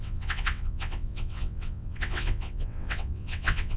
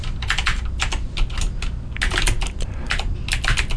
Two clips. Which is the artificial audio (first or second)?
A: first